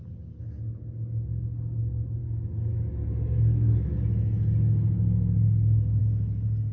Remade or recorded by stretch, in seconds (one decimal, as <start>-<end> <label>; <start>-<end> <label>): 0.0-6.7 recorded